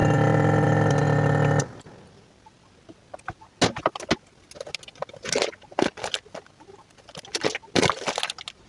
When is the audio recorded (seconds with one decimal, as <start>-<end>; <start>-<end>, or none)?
0.0-8.7